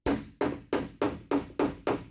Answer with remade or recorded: recorded